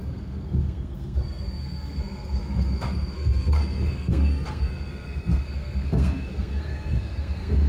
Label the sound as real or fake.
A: fake